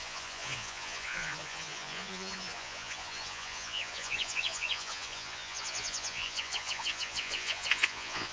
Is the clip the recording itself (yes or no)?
no